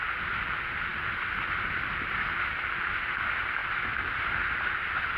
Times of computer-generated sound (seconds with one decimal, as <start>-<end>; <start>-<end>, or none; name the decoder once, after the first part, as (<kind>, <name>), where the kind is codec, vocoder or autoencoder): none